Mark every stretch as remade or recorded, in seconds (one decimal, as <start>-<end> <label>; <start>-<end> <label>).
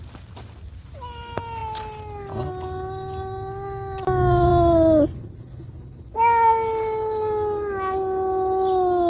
0.0-9.1 recorded